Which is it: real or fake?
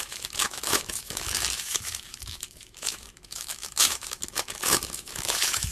fake